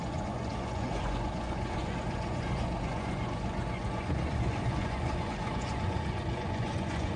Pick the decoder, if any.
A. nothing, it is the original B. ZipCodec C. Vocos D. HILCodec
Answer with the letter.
C